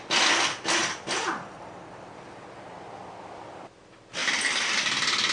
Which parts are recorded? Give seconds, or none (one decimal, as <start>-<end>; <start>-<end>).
0.0-5.3